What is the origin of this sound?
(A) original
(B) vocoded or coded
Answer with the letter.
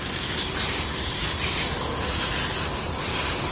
A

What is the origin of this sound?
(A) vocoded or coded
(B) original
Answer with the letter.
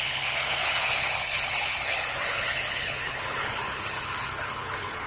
A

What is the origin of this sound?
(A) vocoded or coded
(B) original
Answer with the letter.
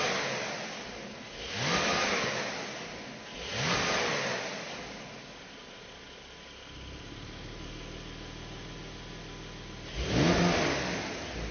B